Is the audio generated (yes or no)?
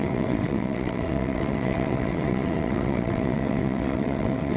yes